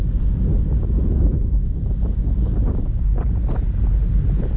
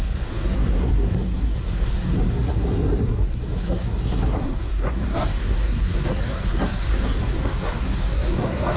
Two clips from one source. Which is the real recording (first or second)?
first